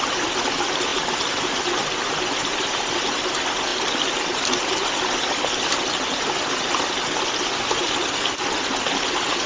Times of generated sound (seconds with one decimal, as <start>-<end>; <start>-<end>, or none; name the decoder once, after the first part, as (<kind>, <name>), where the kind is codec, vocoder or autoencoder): none